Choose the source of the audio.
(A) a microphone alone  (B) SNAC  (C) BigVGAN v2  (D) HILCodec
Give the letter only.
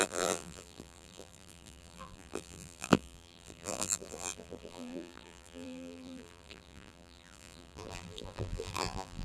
C